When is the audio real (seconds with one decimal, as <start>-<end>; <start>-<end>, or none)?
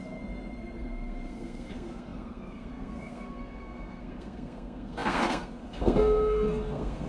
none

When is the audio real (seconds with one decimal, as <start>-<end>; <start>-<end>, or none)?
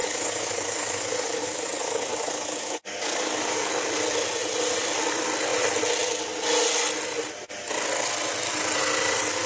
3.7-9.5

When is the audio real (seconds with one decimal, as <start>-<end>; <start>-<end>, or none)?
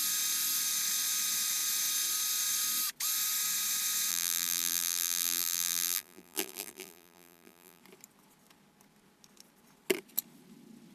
0.0-4.1; 7.8-10.9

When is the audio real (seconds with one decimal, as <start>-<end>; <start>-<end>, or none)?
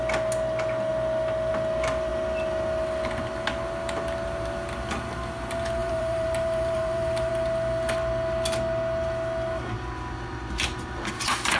0.0-5.8; 7.3-11.6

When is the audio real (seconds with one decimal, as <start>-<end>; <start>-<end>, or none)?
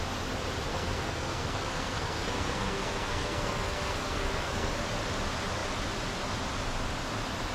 0.0-0.7; 4.7-7.5